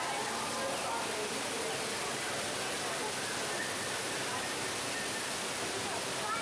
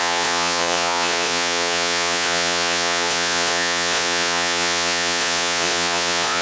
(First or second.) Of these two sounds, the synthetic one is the second